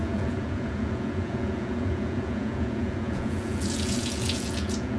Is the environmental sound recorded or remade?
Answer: remade